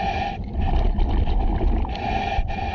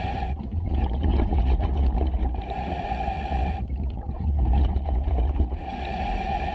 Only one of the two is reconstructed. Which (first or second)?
second